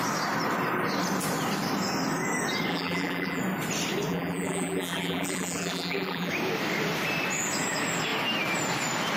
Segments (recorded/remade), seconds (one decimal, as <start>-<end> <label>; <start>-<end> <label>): 0.0-2.7 recorded; 2.7-3.4 remade; 3.4-4.1 recorded; 4.1-6.3 remade; 6.3-9.2 recorded